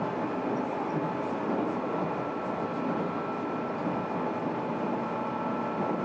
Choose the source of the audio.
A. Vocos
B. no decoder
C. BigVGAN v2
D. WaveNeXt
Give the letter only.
B